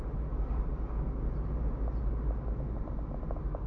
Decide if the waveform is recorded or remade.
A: recorded